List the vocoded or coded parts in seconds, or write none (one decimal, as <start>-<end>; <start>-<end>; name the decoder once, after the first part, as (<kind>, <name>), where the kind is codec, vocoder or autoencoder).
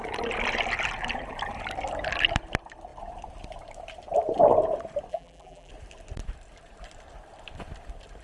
5.1-5.7 (vocoder, BigVGAN v2)